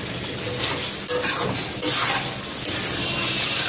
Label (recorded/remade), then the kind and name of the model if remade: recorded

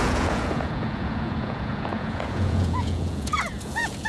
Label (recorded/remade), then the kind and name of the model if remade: remade, vocoder, Vocos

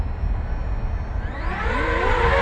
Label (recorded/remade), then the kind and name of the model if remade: recorded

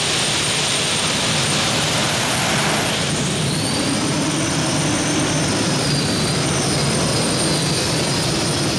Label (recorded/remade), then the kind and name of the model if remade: recorded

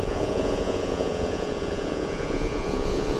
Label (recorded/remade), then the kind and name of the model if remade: remade, vocoder, Vocos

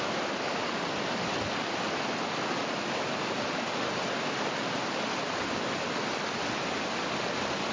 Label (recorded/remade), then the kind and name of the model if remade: recorded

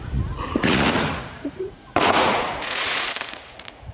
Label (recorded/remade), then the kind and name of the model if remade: remade, vocoder, Vocos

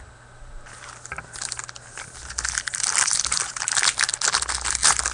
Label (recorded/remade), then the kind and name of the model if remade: recorded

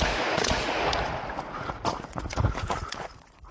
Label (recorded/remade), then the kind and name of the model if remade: remade, vocoder, Vocos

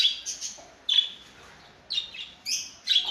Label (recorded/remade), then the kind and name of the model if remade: recorded